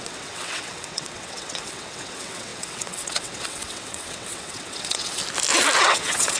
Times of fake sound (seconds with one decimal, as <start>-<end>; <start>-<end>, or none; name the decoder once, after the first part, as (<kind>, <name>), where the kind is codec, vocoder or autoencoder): 0.0-5.2 (vocoder, WaveNeXt); 5.8-6.4